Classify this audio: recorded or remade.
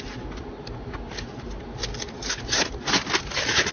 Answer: recorded